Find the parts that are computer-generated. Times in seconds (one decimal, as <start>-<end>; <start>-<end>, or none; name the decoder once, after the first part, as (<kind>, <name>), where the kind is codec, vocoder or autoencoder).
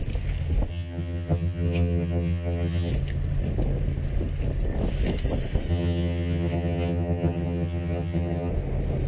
0.7-2.9 (vocoder, HiFi-GAN); 5.7-8.5